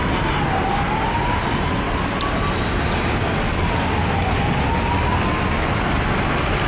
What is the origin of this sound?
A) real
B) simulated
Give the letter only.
A